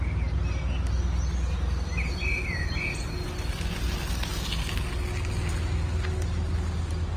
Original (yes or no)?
yes